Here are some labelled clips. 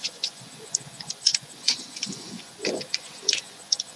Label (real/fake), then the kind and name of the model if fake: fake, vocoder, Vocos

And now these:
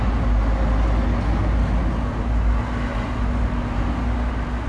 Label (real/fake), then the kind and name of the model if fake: real